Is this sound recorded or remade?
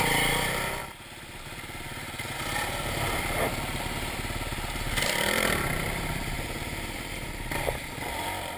remade